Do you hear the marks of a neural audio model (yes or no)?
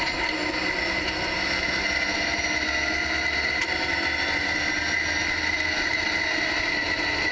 no